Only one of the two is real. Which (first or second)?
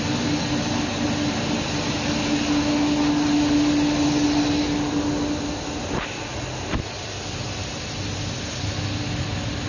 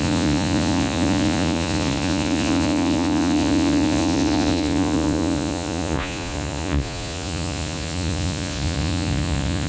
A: first